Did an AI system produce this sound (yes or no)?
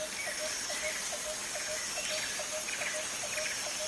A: no